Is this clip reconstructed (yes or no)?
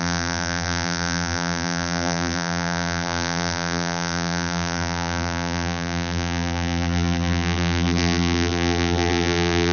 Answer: yes